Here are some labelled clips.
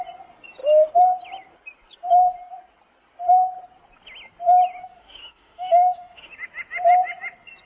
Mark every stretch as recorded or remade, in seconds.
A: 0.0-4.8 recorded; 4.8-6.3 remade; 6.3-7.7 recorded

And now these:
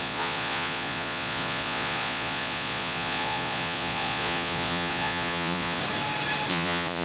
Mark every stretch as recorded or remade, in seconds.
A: 0.0-5.8 remade; 5.8-6.5 recorded; 6.5-7.0 remade

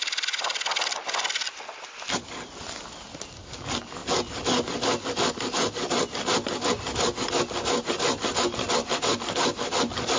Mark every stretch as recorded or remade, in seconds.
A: 0.0-10.2 recorded